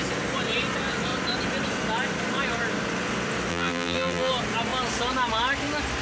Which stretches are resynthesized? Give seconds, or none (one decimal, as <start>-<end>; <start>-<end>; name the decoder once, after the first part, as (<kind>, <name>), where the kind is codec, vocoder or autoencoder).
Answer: 3.5-4.3 (vocoder, BigVGAN v2)